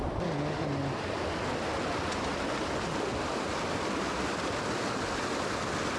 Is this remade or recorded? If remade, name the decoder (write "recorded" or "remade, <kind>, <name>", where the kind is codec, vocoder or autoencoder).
recorded